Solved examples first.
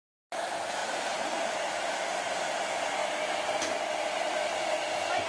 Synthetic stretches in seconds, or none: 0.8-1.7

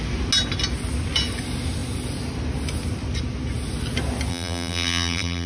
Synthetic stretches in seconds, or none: 4.3-5.5

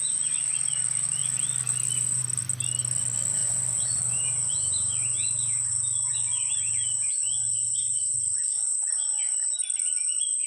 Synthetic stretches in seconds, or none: none

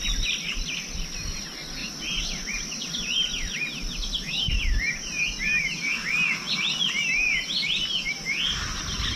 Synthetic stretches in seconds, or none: none